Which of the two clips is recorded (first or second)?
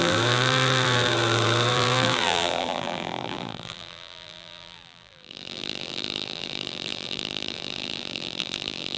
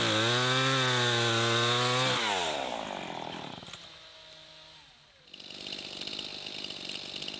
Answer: second